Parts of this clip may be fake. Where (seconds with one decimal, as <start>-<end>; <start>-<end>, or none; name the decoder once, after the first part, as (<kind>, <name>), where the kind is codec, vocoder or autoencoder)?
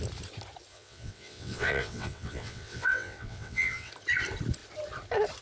0.7-3.9 (vocoder, WaveNeXt)